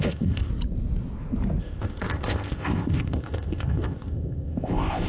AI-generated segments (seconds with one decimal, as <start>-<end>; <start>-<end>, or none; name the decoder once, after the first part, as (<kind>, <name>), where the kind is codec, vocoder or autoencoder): 0.0-0.5 (codec, ZipCodec); 1.6-5.1